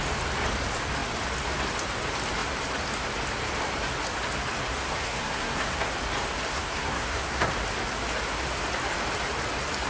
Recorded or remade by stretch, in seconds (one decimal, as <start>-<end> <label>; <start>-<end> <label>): 0.0-5.0 recorded; 5.0-5.9 remade; 5.9-6.5 recorded; 6.5-7.5 remade; 7.5-9.9 recorded

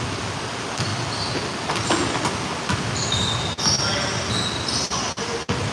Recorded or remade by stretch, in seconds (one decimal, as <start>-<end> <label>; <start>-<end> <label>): 0.0-5.7 recorded

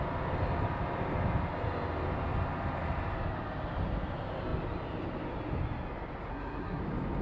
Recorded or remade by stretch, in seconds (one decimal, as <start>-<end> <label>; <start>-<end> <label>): 0.0-6.3 recorded; 6.3-6.8 remade; 6.8-7.2 recorded

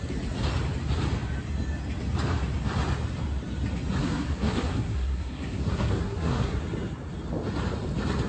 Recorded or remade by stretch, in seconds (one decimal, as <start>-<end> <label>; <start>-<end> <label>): 0.0-4.0 recorded; 4.0-6.6 remade; 6.6-8.3 recorded

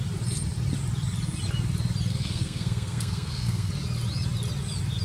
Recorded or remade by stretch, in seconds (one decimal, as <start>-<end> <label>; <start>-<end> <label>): 0.0-2.1 recorded; 2.1-3.7 remade; 3.7-5.0 recorded

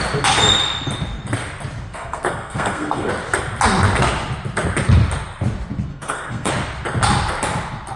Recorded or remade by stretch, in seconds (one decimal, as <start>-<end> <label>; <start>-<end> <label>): 0.0-1.9 recorded; 1.9-3.1 remade; 3.1-5.9 recorded; 5.9-6.5 remade; 6.5-8.0 recorded

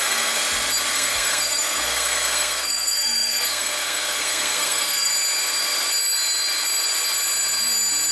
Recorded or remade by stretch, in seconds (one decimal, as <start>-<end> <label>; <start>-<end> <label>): 0.0-0.4 remade; 0.4-0.9 recorded; 0.9-5.1 remade; 5.1-8.1 recorded